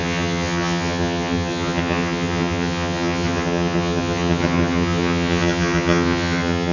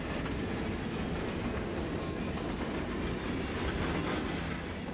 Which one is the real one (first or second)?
second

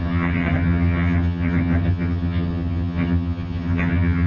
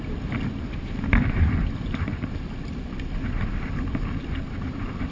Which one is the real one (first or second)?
second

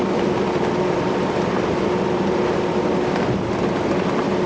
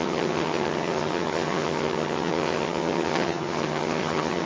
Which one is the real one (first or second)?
first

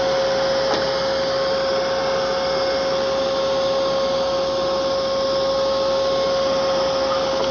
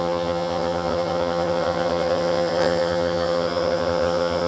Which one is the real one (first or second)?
first